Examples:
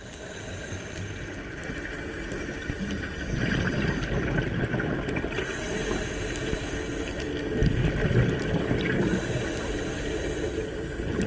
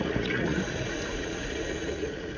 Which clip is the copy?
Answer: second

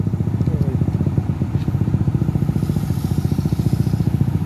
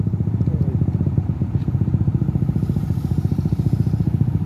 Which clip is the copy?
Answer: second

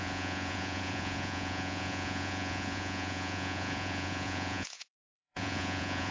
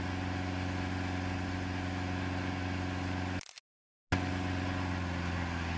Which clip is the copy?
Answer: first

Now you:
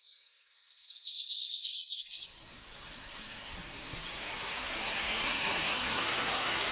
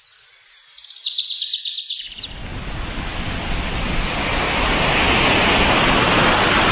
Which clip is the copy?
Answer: first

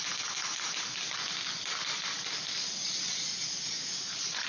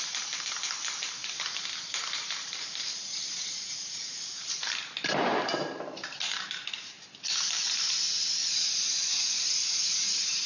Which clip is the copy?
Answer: second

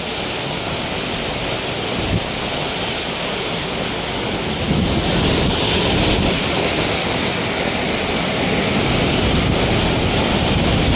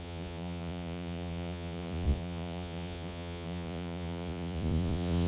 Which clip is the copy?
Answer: second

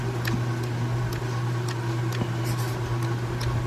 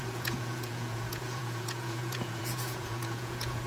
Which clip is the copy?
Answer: second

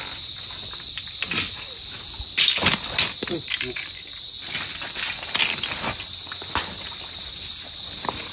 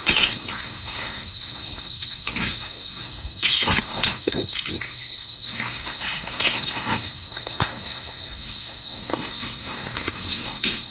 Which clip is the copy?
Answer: second